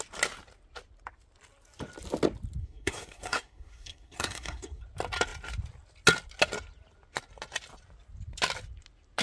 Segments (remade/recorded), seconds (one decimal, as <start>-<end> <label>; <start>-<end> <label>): 0.0-2.6 recorded; 2.6-4.8 remade; 4.8-9.2 recorded